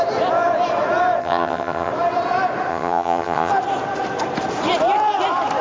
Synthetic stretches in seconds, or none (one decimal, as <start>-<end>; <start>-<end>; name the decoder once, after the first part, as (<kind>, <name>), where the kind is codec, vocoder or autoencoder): 1.2-1.9 (vocoder, HiFi-GAN); 2.7-3.5